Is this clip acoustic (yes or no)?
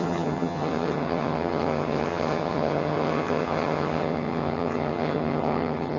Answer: no